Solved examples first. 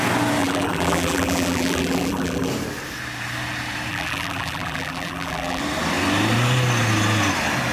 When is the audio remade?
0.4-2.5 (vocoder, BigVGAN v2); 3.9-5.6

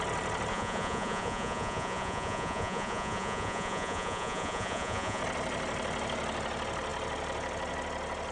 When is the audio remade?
0.5-5.2 (vocoder, Vocos)